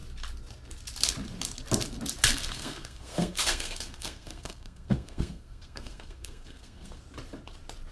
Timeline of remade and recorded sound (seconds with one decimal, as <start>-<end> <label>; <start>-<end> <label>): 0.0-2.3 recorded; 2.3-7.0 remade; 7.0-7.9 recorded